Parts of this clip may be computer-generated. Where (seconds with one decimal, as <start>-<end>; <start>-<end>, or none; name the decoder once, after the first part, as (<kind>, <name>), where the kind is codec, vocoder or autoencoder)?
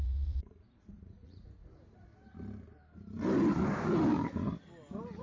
0.0-2.1 (vocoder, Vocos)